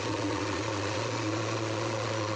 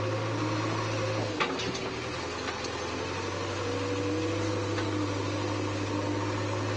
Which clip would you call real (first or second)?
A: second